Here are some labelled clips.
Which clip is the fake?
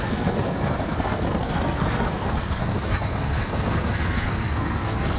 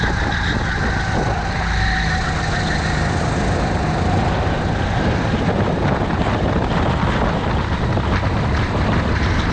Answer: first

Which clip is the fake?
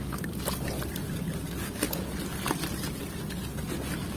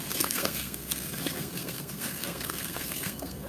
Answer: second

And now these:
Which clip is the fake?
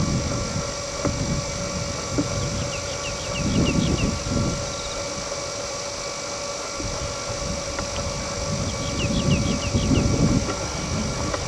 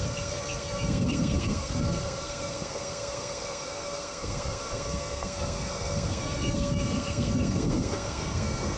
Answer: second